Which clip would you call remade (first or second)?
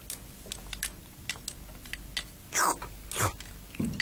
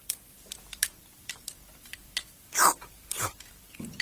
second